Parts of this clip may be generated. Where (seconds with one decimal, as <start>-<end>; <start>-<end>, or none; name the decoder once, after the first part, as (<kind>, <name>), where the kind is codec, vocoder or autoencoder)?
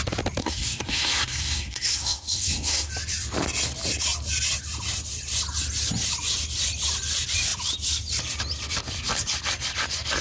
0.4-2.9 (codec, SNAC)